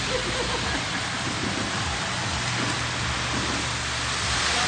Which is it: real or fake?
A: real